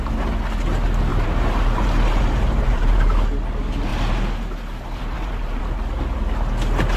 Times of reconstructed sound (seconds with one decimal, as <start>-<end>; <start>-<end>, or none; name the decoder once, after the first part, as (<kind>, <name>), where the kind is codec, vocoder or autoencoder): 1.1-3.0 (vocoder, BigVGAN v2); 3.9-5.6